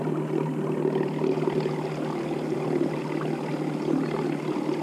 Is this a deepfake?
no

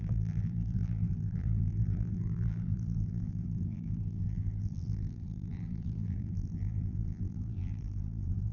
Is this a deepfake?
yes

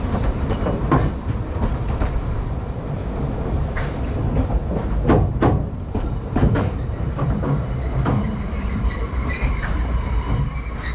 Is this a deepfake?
yes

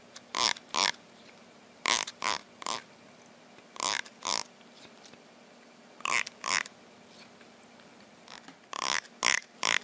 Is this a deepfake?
no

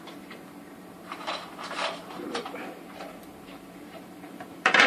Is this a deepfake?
yes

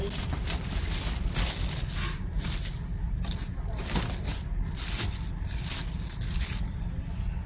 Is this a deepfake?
no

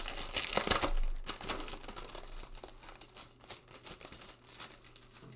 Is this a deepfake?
no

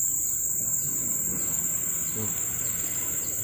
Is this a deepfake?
no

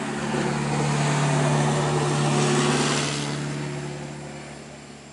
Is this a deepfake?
no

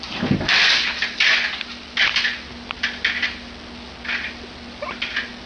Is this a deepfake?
no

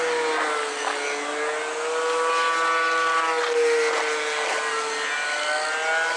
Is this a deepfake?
no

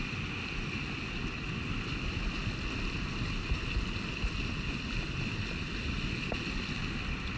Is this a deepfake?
no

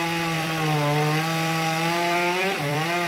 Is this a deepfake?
yes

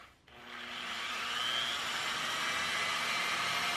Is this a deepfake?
no